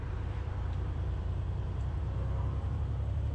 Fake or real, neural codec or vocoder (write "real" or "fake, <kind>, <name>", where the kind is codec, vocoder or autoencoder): fake, vocoder, BigVGAN v2